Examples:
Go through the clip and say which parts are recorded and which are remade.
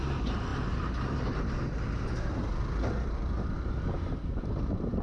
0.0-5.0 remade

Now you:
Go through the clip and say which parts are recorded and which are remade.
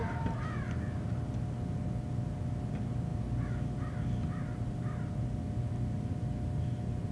0.0-7.1 recorded